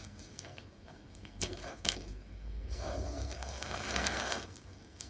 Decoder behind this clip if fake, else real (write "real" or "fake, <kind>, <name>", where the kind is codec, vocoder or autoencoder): fake, codec, SNAC